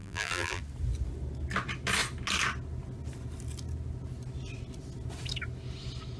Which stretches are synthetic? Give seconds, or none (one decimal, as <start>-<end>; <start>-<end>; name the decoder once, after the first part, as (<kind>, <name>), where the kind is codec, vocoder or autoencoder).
0.0-0.6 (vocoder, BigVGAN v2)

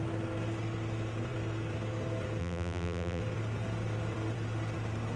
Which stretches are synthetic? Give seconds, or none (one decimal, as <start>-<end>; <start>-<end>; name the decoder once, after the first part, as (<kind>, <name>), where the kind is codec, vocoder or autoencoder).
2.4-3.2 (vocoder, BigVGAN v2)

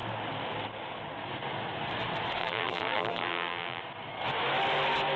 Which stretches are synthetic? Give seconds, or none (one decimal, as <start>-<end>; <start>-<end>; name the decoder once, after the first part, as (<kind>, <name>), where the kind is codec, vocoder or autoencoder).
2.4-3.8 (vocoder, BigVGAN v2)

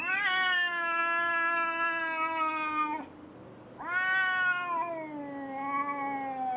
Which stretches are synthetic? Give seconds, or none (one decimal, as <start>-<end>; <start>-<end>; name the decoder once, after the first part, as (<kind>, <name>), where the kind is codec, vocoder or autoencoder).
none